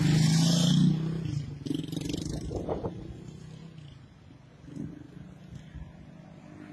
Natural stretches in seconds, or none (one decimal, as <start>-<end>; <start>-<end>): 0.0-1.3; 3.6-6.7